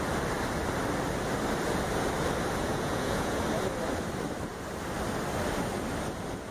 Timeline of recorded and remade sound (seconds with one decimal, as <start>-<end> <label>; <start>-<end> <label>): 0.0-2.7 recorded; 2.7-3.4 remade; 3.4-6.5 recorded